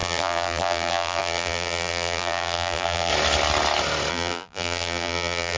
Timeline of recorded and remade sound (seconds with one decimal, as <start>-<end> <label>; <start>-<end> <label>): 0.0-3.1 remade; 3.1-4.1 recorded; 4.1-5.6 remade